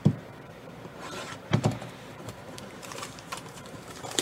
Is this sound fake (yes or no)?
yes